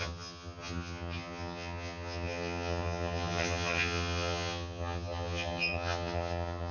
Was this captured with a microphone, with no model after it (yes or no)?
no